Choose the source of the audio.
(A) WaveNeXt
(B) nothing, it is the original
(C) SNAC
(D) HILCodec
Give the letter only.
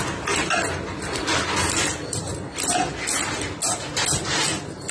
B